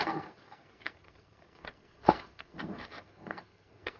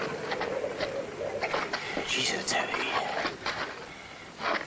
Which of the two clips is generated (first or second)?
first